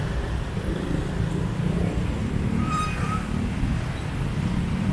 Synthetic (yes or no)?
yes